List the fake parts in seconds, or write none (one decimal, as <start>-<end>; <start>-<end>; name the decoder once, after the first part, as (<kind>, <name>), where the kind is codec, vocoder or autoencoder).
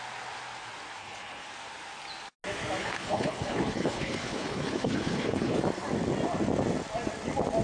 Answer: 1.0-1.5 (codec, HILCodec); 2.8-5.6